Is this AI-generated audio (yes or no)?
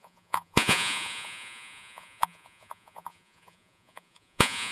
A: yes